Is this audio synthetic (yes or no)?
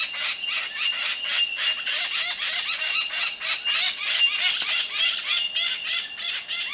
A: no